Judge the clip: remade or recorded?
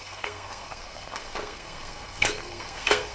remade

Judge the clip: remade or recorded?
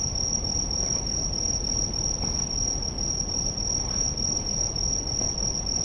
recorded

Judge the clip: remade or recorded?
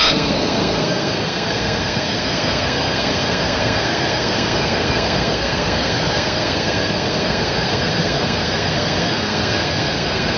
remade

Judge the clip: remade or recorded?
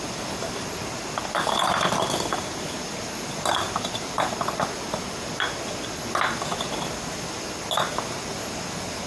recorded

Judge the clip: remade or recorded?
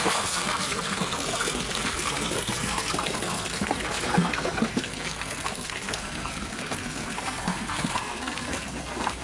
remade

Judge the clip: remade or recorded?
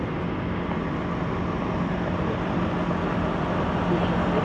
recorded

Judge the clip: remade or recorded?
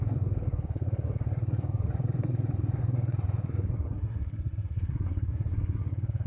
remade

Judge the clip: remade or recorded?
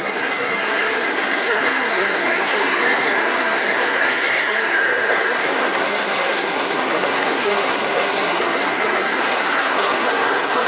remade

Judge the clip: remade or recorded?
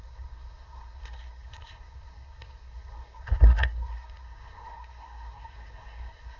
remade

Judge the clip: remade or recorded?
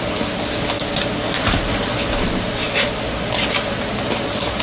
recorded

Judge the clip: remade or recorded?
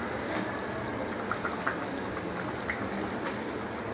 recorded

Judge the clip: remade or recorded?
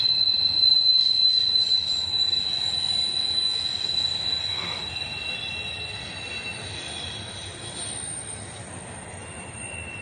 recorded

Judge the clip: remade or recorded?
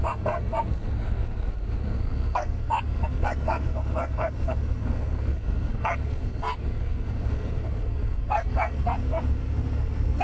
remade